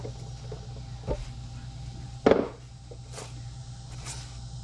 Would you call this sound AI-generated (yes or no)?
no